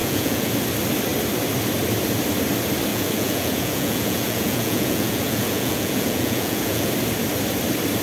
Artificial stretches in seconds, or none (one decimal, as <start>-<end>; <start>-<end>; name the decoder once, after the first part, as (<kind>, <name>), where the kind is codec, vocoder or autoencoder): 0.0-0.5 (vocoder, Vocos); 2.9-6.9